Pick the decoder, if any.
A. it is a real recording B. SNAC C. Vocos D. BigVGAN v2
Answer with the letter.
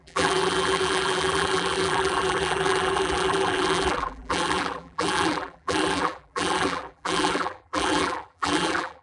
D